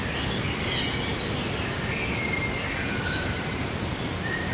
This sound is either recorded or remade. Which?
recorded